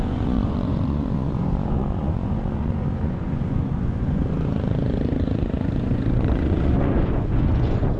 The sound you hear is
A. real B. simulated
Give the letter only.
B